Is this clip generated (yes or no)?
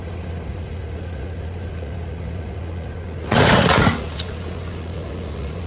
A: yes